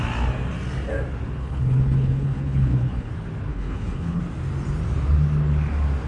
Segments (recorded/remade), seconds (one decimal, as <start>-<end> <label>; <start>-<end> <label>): 0.0-1.4 recorded; 1.4-3.1 remade; 3.1-3.5 recorded; 3.5-4.2 remade; 4.2-6.1 recorded